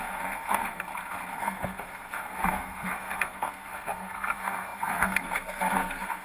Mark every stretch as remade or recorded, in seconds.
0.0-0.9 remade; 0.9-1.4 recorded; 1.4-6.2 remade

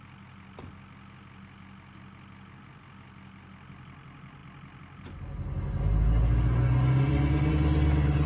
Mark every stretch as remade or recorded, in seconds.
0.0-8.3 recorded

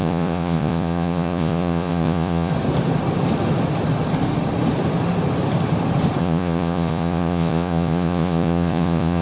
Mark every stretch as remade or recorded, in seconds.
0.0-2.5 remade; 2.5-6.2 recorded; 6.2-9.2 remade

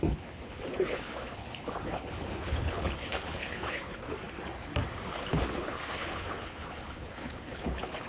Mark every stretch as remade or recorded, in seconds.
0.0-4.1 remade; 4.1-5.0 recorded; 5.0-8.1 remade

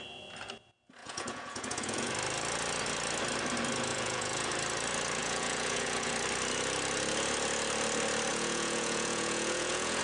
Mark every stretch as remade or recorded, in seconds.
0.0-1.0 recorded; 1.0-2.1 remade; 2.1-3.9 recorded; 3.9-4.5 remade; 4.5-5.2 recorded; 5.2-6.1 remade; 6.1-8.3 recorded; 8.3-10.0 remade

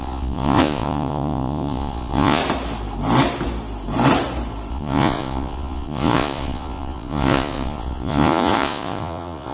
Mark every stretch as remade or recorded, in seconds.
0.0-2.4 remade; 2.4-4.7 recorded; 4.7-9.5 remade

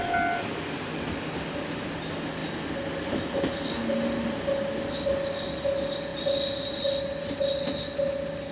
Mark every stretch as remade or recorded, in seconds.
0.0-8.5 recorded

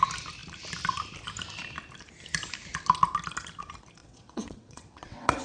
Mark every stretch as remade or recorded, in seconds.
0.0-4.0 recorded; 4.0-5.4 remade